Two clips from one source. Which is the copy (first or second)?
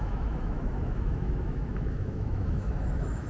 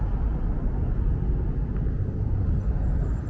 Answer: first